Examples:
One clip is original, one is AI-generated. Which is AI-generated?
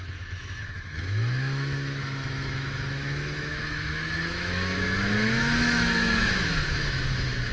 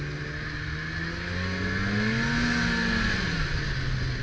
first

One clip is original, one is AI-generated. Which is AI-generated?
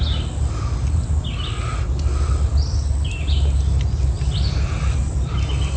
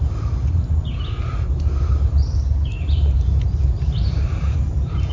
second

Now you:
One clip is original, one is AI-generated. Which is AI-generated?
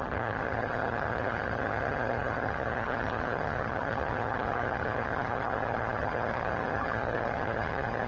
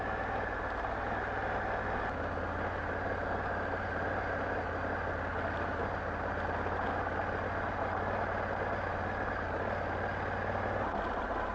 first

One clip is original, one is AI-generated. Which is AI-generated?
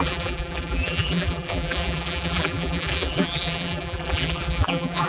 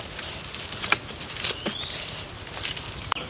first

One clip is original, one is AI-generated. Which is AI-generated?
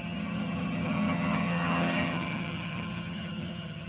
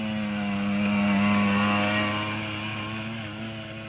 first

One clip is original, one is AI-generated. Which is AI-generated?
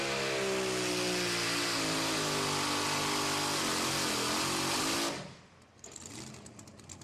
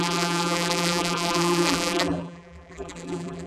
second